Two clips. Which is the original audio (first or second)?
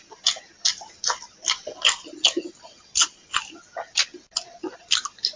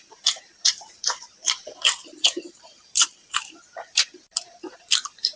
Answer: first